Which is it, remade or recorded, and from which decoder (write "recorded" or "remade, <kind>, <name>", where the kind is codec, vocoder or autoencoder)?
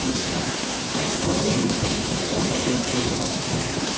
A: remade, codec, SNAC